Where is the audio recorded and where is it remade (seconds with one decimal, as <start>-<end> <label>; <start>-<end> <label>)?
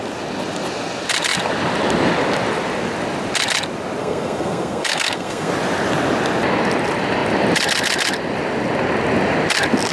0.0-4.0 recorded; 4.0-5.5 remade; 5.5-9.9 recorded